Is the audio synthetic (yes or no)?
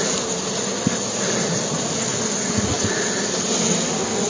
no